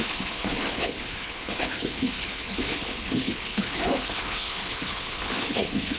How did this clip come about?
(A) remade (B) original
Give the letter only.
A